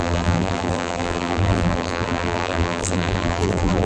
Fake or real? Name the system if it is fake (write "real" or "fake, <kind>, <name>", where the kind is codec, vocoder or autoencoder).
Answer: fake, vocoder, BigVGAN v2